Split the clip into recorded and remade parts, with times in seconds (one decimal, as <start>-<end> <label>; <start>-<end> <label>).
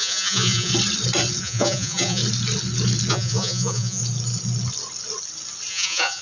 0.0-0.7 remade; 0.7-1.4 recorded; 1.4-2.2 remade; 2.2-3.1 recorded; 3.1-4.0 remade; 4.0-5.7 recorded; 5.7-6.2 remade